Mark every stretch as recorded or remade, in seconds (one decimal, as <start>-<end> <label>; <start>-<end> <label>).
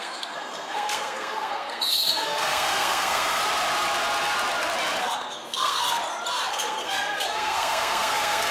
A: 0.0-3.4 remade; 3.4-5.0 recorded; 5.0-6.0 remade; 6.0-6.5 recorded; 6.5-8.5 remade